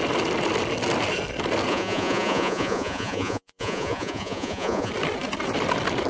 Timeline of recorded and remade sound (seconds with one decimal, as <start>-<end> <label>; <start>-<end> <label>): 0.0-1.7 recorded; 1.7-4.9 remade; 4.9-6.1 recorded